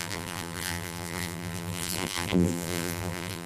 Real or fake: fake